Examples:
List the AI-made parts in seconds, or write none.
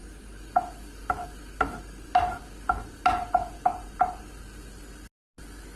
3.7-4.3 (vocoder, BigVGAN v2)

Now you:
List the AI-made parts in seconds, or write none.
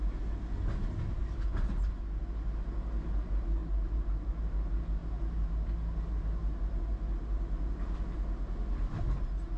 3.6-4.3 (vocoder, BigVGAN v2)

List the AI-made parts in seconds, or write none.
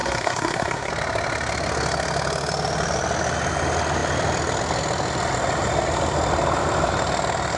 0.0-0.9 (codec, SNAC)